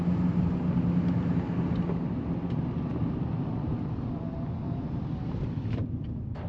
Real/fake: real